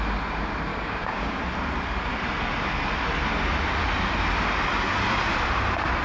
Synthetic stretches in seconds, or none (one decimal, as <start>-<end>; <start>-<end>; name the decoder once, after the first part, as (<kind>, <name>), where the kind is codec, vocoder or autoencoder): 0.7-1.4 (codec, DAC)